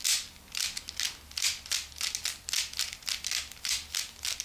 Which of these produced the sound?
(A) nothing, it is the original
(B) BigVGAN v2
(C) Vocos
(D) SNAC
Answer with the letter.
A